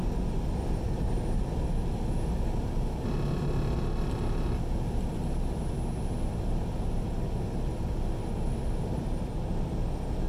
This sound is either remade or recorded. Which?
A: recorded